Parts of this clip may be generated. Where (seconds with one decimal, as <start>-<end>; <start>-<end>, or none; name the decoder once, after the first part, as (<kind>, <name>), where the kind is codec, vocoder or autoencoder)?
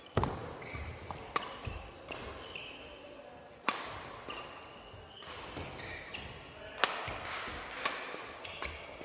none